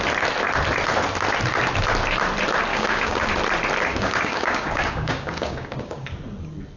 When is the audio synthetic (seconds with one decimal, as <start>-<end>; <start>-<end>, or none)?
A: 2.7-3.3; 3.9-6.1